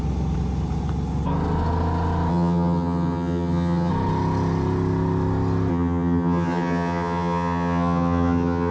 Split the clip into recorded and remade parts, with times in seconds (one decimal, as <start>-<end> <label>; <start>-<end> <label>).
0.0-2.3 recorded; 2.3-3.9 remade; 3.9-5.7 recorded; 5.7-8.7 remade